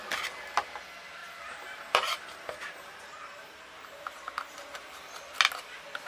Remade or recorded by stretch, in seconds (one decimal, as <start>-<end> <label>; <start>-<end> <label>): 0.0-1.2 recorded; 1.2-4.9 remade; 4.9-6.1 recorded